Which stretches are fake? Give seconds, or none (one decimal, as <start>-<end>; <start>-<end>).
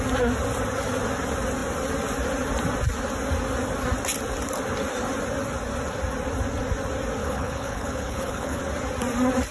7.2-8.6